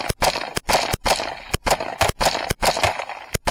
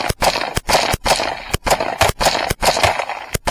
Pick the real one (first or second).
second